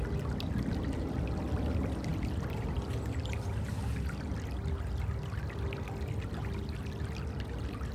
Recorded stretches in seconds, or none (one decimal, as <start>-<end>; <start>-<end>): 0.0-7.9

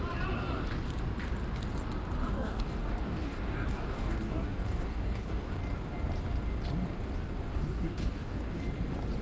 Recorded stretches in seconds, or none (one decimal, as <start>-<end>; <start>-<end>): 0.0-2.2; 5.5-7.5; 8.6-9.2

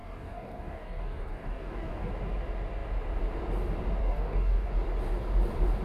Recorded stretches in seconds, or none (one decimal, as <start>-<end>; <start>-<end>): 2.1-4.0; 4.7-5.8

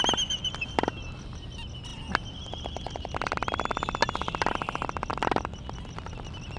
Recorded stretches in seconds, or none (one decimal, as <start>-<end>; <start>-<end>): 0.0-6.6

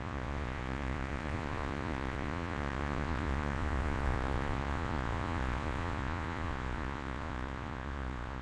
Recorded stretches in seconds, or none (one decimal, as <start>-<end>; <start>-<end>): none

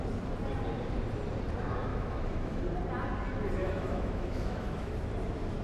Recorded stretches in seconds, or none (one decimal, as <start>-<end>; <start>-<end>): 0.0-1.9; 2.6-3.6; 4.9-5.6